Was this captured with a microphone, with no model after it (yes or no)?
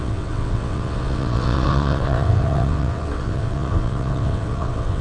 no